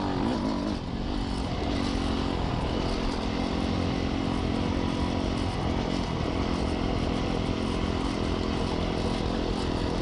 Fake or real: real